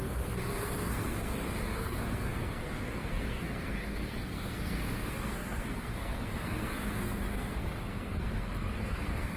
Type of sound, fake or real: fake